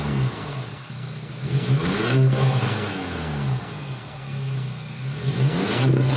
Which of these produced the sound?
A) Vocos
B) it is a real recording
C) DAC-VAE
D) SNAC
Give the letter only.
D